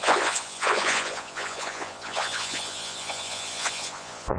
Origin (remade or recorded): remade